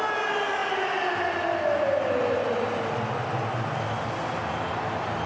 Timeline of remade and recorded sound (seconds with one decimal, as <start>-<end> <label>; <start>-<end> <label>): 0.0-5.3 recorded